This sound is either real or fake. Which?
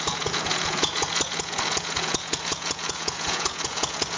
fake